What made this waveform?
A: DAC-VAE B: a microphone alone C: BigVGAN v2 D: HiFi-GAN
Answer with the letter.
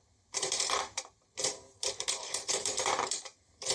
C